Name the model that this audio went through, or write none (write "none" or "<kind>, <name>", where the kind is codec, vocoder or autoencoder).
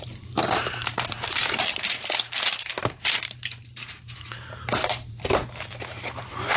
vocoder, BigVGAN v2